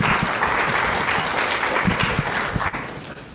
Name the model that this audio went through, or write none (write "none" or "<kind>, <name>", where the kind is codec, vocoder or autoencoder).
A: none